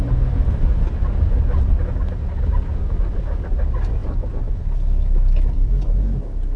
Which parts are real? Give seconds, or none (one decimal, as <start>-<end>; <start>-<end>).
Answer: 0.0-6.6